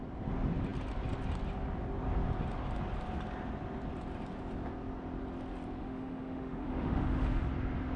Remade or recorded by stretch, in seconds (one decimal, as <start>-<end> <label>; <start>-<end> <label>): 0.0-5.8 recorded; 5.8-7.5 remade; 7.5-8.0 recorded